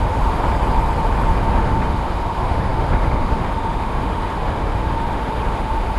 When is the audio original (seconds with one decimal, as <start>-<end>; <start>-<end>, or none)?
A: 0.4-1.3